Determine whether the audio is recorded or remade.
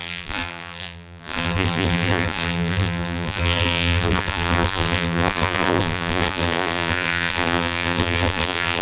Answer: remade